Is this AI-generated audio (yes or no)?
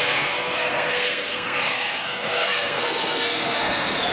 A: yes